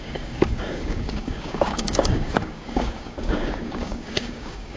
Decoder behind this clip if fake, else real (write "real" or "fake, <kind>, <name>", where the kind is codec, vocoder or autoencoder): fake, codec, DAC